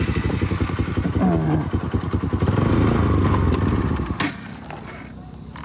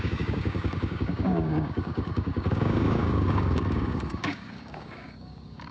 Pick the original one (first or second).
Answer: first